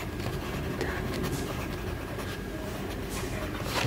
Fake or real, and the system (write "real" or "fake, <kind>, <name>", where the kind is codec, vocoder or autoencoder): fake, vocoder, BigVGAN v2